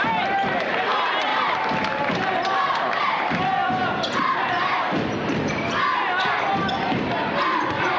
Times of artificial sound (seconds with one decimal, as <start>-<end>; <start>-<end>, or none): 0.0-1.3; 2.9-3.8; 6.8-8.0